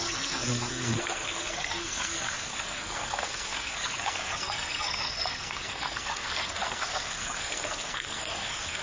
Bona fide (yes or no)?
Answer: no